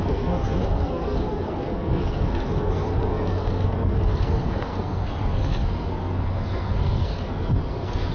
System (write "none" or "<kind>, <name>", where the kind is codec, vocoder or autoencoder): codec, SNAC